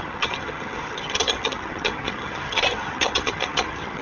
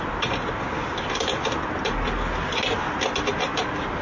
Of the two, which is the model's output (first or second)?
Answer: first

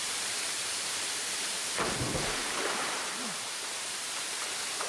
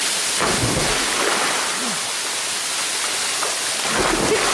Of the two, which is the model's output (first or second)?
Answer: first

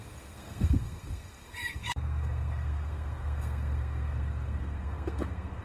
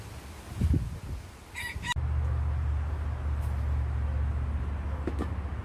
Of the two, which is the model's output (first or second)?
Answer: first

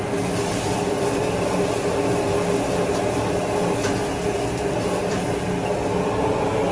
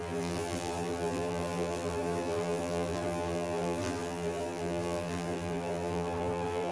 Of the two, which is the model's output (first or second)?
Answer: second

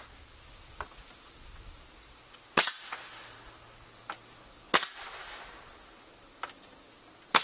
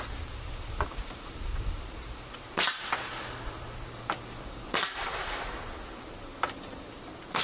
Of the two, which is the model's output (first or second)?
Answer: second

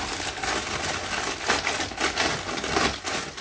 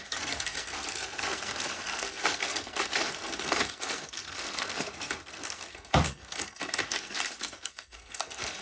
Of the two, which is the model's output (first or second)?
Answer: second